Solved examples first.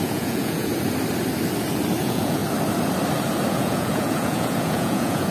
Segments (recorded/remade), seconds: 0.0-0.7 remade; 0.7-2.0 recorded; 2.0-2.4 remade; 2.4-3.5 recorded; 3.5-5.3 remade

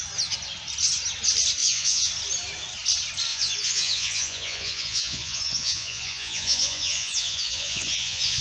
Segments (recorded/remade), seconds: 0.0-1.6 recorded; 1.6-2.1 remade; 2.1-3.3 recorded; 3.3-8.4 remade

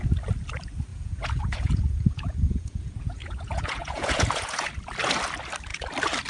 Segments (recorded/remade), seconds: 0.0-0.9 recorded; 0.9-4.7 remade; 4.7-6.3 recorded

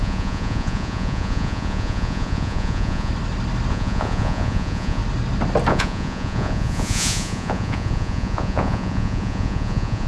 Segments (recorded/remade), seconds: 0.0-3.1 remade; 3.1-3.7 recorded; 3.7-5.0 remade; 5.0-5.7 recorded; 5.7-10.1 remade

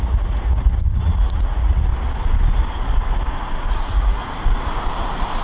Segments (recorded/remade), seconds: 0.0-1.9 remade; 1.9-3.7 recorded; 3.7-4.2 remade; 4.2-5.4 recorded

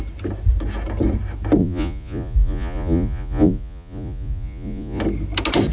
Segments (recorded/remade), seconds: 0.0-1.6 recorded; 1.6-5.0 remade; 5.0-5.7 recorded

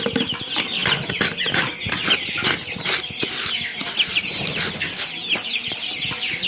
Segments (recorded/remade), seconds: 0.0-6.5 recorded